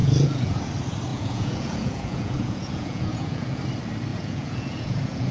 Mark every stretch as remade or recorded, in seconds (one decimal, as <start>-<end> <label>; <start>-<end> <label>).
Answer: 0.0-0.6 remade; 0.6-1.1 recorded; 1.1-3.6 remade; 3.6-4.1 recorded; 4.1-5.3 remade